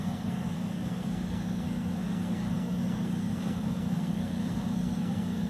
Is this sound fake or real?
fake